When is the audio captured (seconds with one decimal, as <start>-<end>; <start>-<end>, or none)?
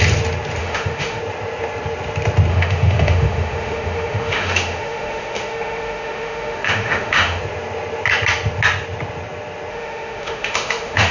0.0-0.6; 1.2-2.5; 7.4-9.7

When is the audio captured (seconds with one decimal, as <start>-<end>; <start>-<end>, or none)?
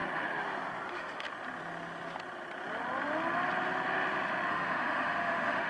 0.0-0.9; 1.3-4.5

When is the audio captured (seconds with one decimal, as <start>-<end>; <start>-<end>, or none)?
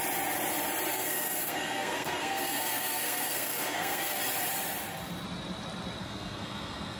0.0-0.9; 4.2-6.0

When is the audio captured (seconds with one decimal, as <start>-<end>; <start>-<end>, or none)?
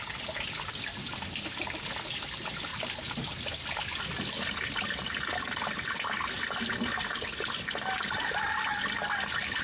0.0-9.6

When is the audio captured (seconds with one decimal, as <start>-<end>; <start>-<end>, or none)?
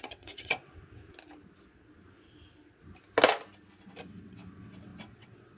1.0-4.0